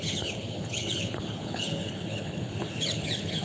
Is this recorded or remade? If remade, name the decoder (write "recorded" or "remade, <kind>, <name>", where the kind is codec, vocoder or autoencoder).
remade, codec, HILCodec